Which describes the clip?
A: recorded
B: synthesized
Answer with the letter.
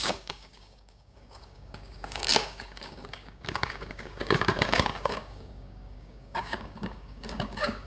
B